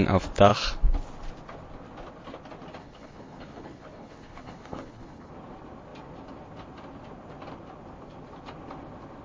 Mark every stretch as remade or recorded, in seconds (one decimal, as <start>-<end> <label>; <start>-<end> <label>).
0.0-2.8 recorded; 2.8-5.3 remade; 5.3-9.2 recorded